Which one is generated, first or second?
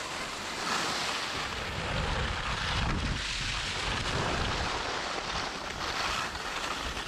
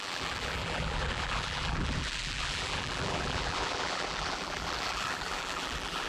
second